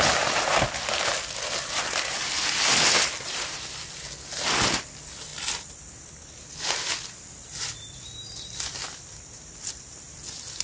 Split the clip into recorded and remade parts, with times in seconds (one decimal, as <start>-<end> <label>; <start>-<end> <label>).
0.0-10.6 recorded